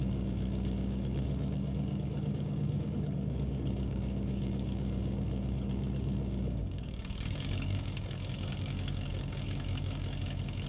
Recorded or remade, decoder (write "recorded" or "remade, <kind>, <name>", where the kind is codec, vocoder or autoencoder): remade, codec, DAC